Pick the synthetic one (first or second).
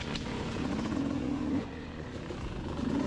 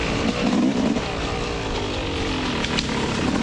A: first